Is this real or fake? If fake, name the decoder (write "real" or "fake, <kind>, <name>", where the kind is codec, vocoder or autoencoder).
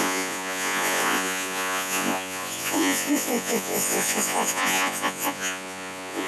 fake, vocoder, Vocos